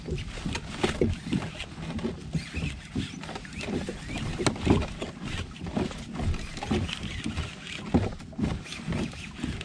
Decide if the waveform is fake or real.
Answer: real